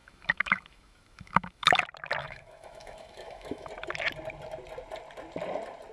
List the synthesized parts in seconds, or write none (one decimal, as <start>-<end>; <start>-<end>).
0.0-1.8; 2.2-3.7